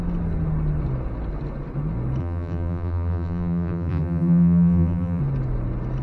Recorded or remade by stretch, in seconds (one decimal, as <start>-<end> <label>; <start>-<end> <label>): 0.0-2.2 recorded; 2.2-5.2 remade; 5.2-6.0 recorded

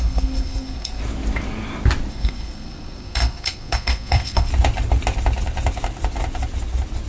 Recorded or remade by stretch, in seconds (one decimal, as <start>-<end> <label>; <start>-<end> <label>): 0.0-1.0 remade; 1.0-2.1 recorded; 2.1-4.5 remade; 4.5-7.1 recorded

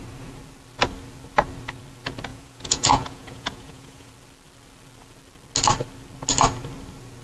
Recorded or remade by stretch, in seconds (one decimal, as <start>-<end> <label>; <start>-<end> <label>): 0.0-2.3 recorded; 2.3-4.1 remade; 4.1-7.2 recorded

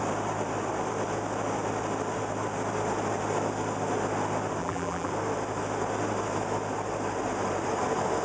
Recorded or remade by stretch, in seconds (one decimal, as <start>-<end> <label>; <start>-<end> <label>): 0.0-4.6 recorded; 4.6-5.1 remade; 5.1-8.2 recorded

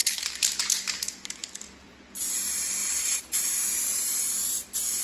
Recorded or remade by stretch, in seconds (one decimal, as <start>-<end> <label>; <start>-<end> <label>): 0.0-0.7 remade; 0.7-1.4 recorded; 1.4-2.2 remade; 2.2-2.8 recorded; 2.8-3.8 remade; 3.8-5.0 recorded

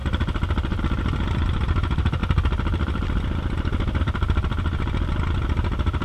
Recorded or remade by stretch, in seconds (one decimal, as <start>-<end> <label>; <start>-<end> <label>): 0.0-6.0 recorded